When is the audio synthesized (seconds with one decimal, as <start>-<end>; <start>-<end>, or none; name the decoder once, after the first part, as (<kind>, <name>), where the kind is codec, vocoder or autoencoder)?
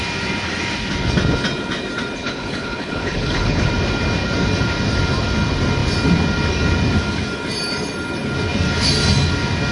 2.2-3.7 (codec, HILCodec)